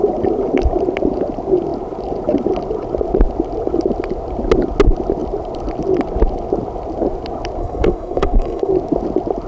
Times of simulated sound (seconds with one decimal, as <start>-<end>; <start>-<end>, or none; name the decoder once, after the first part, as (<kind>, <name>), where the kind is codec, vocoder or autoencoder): 7.6-8.7 (codec, SNAC)